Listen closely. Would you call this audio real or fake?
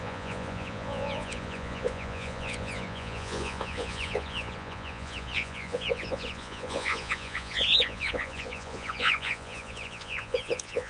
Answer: fake